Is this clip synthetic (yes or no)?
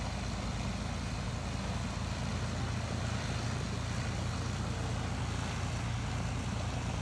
no